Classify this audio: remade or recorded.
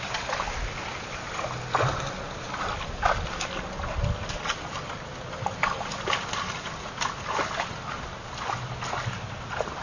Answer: recorded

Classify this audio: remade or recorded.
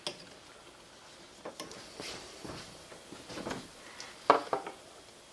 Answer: recorded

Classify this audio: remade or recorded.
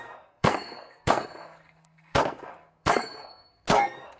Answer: remade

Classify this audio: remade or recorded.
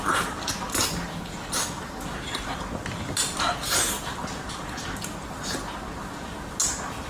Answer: recorded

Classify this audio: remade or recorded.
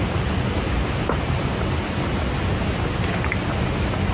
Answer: recorded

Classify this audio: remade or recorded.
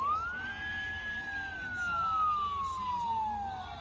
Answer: recorded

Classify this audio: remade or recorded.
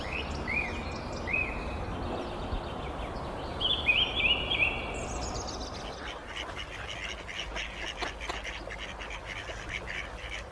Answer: recorded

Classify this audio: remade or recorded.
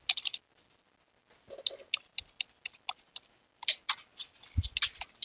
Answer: recorded